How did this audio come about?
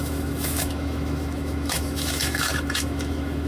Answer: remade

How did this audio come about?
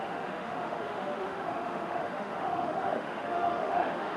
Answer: remade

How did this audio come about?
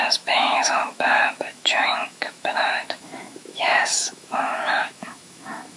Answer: remade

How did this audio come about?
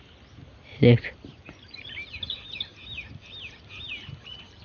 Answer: recorded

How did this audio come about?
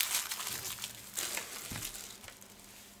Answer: recorded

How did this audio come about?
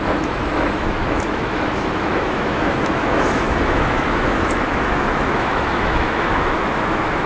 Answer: remade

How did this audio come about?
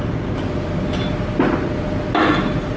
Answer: recorded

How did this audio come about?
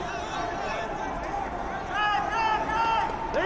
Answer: recorded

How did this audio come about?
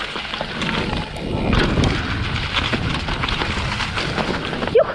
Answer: recorded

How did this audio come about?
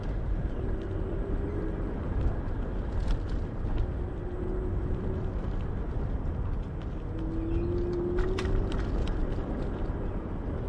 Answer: recorded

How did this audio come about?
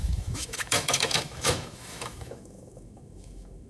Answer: remade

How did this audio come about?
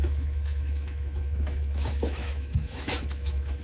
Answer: remade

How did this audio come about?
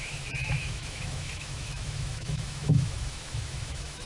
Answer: remade